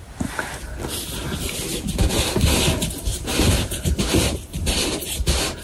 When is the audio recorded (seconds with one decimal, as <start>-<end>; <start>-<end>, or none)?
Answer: 0.0-3.1